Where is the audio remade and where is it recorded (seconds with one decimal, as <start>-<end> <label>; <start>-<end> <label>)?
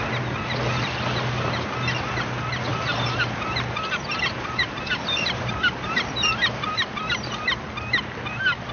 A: 0.0-2.7 recorded; 2.7-6.7 remade; 6.7-8.7 recorded